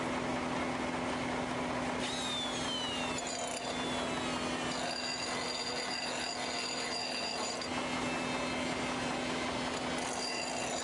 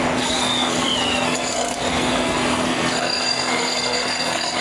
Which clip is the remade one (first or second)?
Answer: second